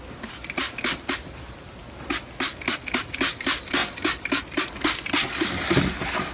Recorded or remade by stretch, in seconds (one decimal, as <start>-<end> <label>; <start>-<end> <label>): 0.0-6.3 recorded